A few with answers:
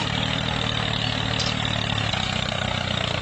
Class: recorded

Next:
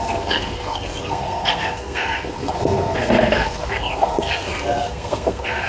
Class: remade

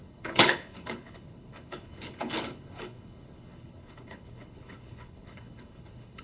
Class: remade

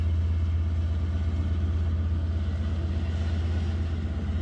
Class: recorded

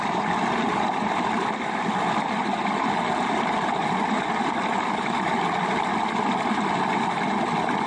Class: recorded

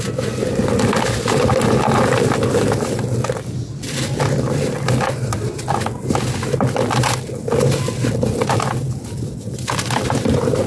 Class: recorded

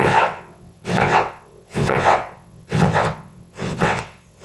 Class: remade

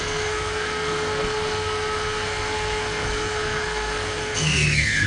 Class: remade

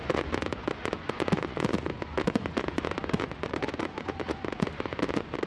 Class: remade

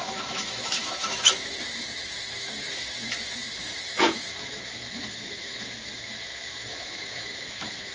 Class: remade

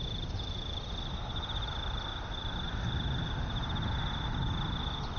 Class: recorded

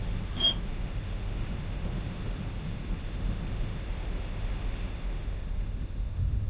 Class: remade